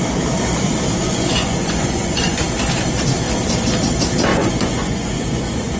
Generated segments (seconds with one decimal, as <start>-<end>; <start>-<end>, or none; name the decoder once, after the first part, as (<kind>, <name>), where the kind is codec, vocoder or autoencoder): 1.0-2.4 (vocoder, Vocos); 4.3-5.8